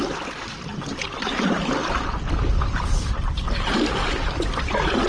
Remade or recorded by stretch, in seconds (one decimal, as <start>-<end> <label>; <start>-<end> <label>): 0.0-0.7 remade; 0.7-1.3 recorded; 1.3-1.8 remade; 1.8-5.1 recorded